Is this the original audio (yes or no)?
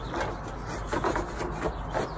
yes